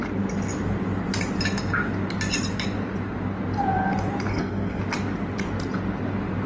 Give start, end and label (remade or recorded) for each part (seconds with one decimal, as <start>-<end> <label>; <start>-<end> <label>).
0.0-4.3 recorded; 4.3-4.8 remade; 4.8-6.5 recorded

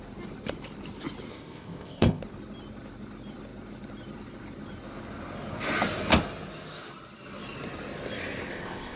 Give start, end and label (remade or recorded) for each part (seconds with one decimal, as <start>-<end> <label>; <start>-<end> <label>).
0.0-1.3 recorded; 1.3-2.2 remade; 2.2-8.5 recorded; 8.5-9.0 remade

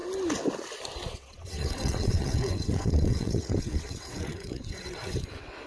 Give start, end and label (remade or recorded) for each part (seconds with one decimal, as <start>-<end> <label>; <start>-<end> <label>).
0.0-1.1 recorded; 1.1-5.7 remade

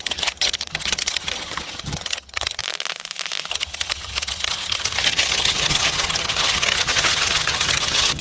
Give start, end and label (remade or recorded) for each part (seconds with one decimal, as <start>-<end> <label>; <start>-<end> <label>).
0.0-2.6 remade; 2.6-3.5 recorded; 3.5-8.2 remade

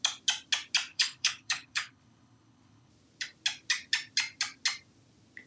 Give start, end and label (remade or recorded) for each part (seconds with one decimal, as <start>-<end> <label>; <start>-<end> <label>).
0.0-0.9 recorded; 0.9-2.9 remade; 2.9-5.5 recorded

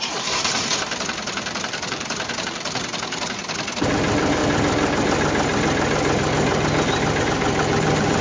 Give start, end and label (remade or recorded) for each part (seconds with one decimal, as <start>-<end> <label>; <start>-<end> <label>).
0.0-3.4 remade; 3.4-3.9 recorded; 3.9-4.4 remade; 4.4-7.2 recorded; 7.2-8.2 remade

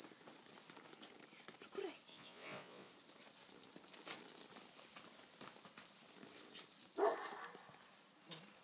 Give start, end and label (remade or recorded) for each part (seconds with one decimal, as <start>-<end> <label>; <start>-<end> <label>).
0.0-2.1 recorded; 2.1-2.9 remade; 2.9-8.6 recorded